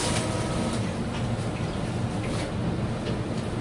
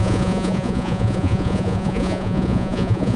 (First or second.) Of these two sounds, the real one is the first